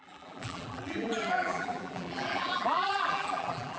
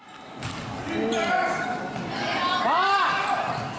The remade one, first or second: first